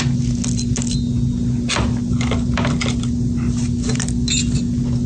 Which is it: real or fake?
real